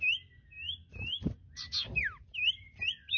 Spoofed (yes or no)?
no